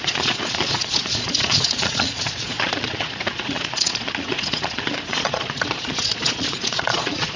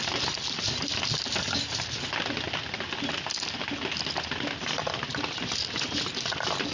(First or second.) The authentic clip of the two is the second